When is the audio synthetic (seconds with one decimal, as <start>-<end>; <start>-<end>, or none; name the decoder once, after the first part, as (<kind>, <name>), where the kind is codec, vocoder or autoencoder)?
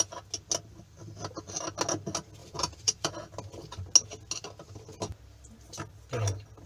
2.4-3.1 (vocoder, BigVGAN v2)